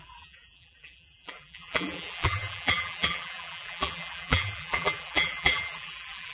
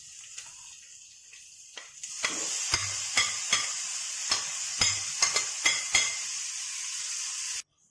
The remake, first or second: first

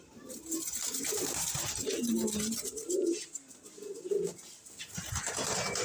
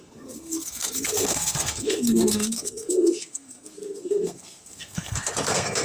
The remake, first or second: second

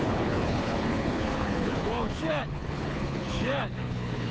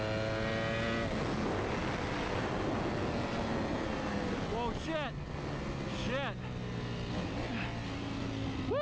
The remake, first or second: first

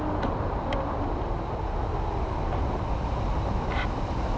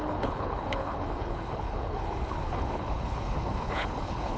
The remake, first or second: second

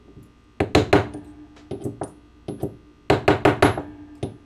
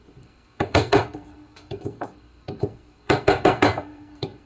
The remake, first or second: second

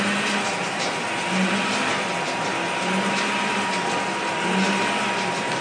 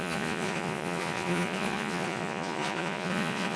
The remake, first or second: second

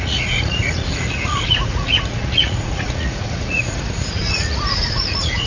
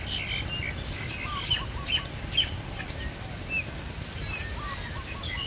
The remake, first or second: first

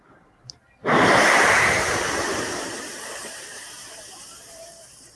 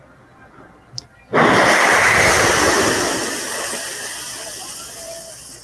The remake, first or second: first